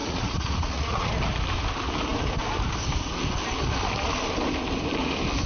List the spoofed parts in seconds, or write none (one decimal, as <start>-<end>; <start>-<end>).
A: 0.0-1.1